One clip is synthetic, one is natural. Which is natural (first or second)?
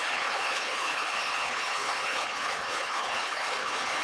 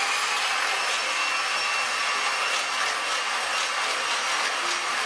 second